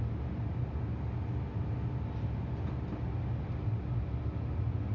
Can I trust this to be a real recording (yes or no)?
yes